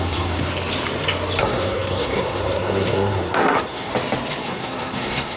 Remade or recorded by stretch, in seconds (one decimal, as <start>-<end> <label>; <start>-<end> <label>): 0.0-0.5 remade; 0.5-1.4 recorded; 1.4-3.9 remade; 3.9-4.4 recorded; 4.4-5.4 remade